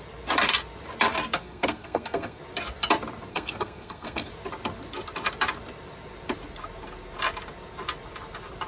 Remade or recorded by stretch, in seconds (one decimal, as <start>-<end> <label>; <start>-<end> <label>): 0.0-1.4 recorded; 1.4-2.4 remade; 2.4-3.3 recorded; 3.3-4.3 remade; 4.3-8.7 recorded